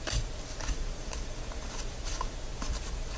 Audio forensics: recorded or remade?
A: remade